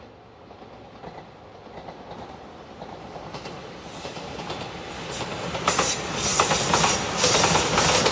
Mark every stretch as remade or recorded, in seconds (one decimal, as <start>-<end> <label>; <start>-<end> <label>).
0.0-8.1 recorded